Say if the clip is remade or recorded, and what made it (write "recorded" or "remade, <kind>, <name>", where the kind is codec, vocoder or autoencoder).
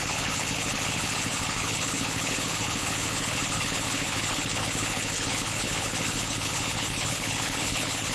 remade, codec, HILCodec